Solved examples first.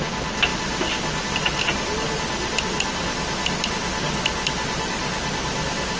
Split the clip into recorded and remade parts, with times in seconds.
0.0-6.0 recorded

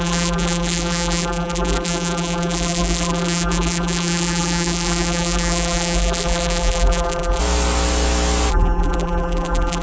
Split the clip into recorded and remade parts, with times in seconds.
0.0-7.4 remade; 7.4-8.5 recorded; 8.5-9.8 remade

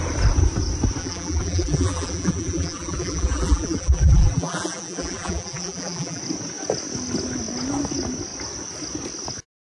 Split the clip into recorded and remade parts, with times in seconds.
0.0-1.0 recorded; 1.0-6.2 remade; 6.2-9.8 recorded

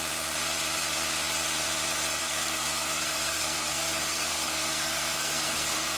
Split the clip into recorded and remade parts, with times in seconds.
0.0-2.2 recorded; 2.2-6.0 remade